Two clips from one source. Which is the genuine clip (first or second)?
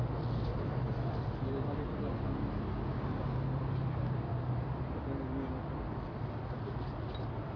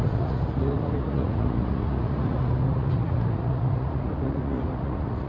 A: first